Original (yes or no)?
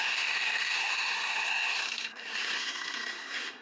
no